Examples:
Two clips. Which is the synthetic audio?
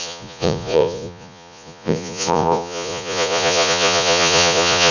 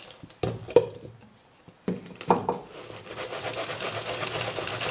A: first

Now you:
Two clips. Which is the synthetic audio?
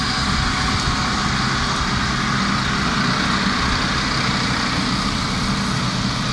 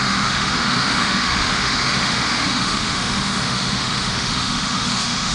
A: second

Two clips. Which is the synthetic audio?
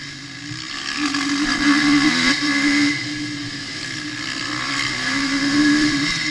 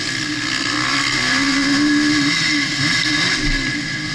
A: first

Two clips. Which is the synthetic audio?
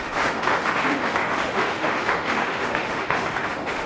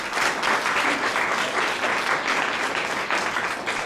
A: first